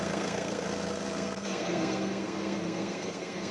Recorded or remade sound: remade